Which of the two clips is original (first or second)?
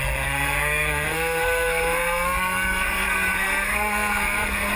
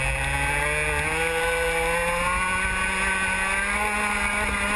second